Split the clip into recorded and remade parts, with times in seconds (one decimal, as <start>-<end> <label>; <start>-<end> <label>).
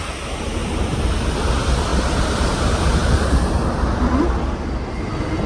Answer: 0.0-0.6 recorded; 0.6-1.4 remade; 1.4-5.5 recorded